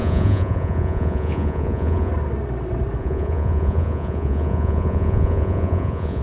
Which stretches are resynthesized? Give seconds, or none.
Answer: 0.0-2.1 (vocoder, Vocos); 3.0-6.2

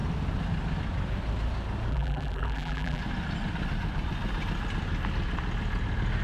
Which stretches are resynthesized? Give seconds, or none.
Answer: 1.9-3.0 (vocoder, BigVGAN v2)

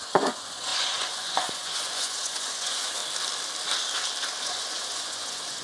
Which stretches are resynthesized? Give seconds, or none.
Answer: 0.0-3.0 (vocoder, Vocos); 4.4-5.6

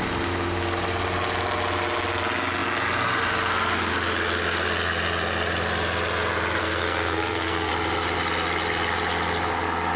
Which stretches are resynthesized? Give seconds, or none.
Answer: 6.6-7.7 (codec, SNAC)

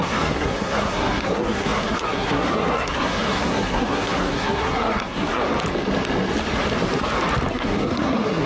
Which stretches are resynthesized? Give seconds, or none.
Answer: 0.0-5.4 (codec, SNAC); 7.5-8.5